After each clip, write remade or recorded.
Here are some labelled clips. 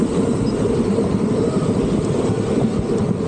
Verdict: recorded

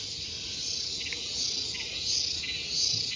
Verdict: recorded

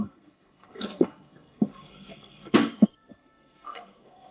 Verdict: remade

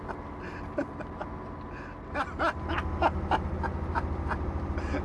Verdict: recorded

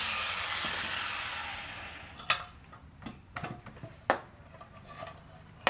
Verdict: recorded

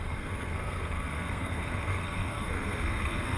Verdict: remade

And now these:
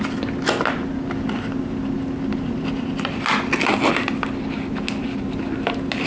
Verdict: recorded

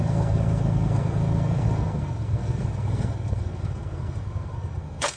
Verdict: remade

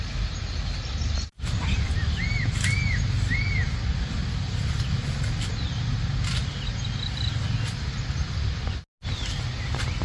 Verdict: recorded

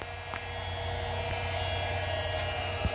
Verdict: recorded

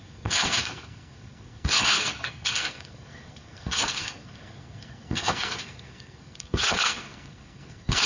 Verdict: remade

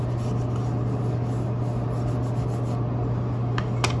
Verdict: recorded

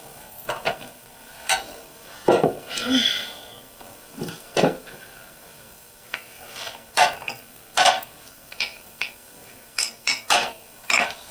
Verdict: remade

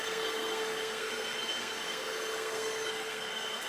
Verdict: remade